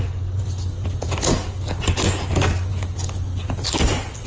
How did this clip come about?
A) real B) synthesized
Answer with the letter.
A